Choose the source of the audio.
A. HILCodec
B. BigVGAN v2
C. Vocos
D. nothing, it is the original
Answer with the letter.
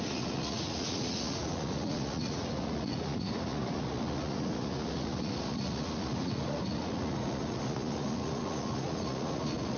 C